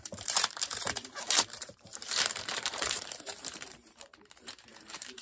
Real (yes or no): no